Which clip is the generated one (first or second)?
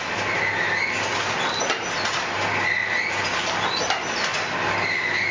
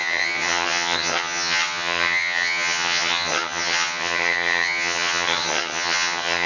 second